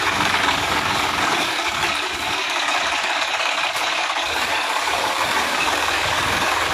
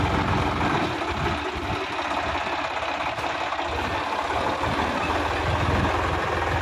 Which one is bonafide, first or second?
second